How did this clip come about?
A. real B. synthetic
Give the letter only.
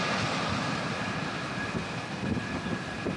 A